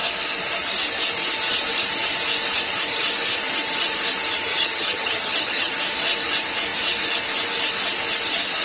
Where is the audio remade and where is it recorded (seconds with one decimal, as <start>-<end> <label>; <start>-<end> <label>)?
0.0-4.5 recorded; 4.5-5.7 remade; 5.7-8.6 recorded